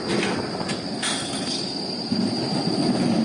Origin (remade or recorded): recorded